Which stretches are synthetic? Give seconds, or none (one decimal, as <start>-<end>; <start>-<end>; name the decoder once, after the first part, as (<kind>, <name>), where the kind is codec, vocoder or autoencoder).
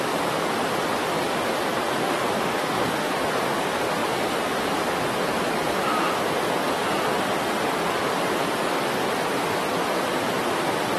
2.0-3.1 (autoencoder, DAC-VAE)